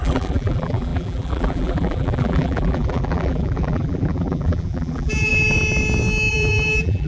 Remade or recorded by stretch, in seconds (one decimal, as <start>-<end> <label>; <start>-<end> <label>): 0.0-5.3 remade; 5.3-6.3 recorded; 6.3-7.1 remade